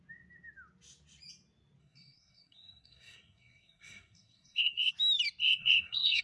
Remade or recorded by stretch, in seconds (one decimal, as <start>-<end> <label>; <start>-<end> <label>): 0.0-1.8 recorded; 1.8-4.9 remade; 4.9-5.4 recorded; 5.4-6.2 remade